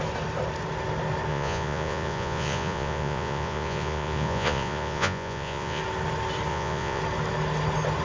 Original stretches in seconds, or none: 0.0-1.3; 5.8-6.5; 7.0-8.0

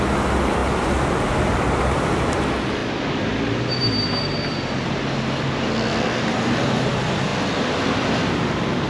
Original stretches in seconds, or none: 0.0-8.9

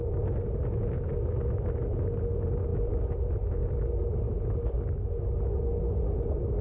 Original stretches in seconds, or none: 0.0-6.6

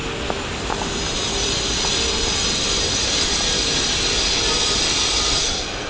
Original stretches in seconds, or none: 0.0-5.4

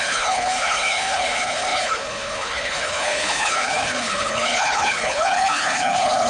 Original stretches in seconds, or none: none

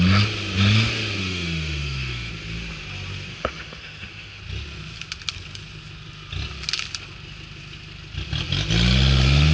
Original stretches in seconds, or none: 0.0-1.2; 2.3-3.3; 4.4-9.5

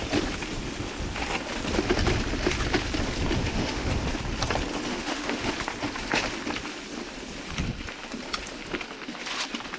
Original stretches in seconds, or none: 0.0-3.4; 3.9-4.9; 5.5-9.8

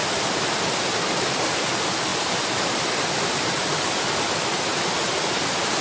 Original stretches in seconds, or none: 0.0-5.8